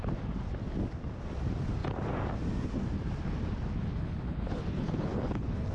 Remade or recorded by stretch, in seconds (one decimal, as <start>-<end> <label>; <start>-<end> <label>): 0.0-3.9 recorded; 3.9-5.7 remade

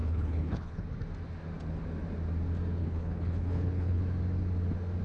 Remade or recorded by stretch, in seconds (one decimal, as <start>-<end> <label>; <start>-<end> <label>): 0.0-0.8 remade; 0.8-2.8 recorded; 2.8-4.0 remade; 4.0-5.0 recorded

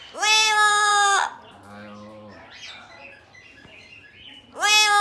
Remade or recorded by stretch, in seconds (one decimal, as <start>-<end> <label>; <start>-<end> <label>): 0.0-5.0 recorded

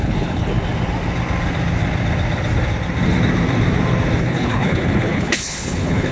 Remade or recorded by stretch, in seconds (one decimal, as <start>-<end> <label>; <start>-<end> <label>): 0.0-0.5 remade; 0.5-4.2 recorded; 4.2-6.1 remade

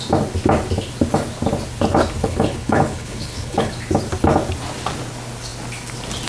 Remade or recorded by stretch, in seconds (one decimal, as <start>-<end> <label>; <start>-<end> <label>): 0.0-2.2 recorded; 2.2-3.7 remade; 3.7-6.3 recorded